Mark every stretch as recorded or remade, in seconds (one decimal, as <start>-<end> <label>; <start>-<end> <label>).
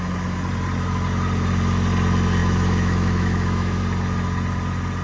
0.0-2.4 recorded; 2.4-3.8 remade; 3.8-5.0 recorded